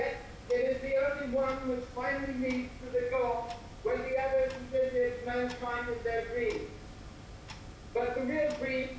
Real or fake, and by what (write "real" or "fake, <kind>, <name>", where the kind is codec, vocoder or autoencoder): real